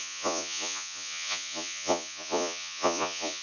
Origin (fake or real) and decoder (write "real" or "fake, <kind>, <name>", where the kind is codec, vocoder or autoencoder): fake, vocoder, Vocos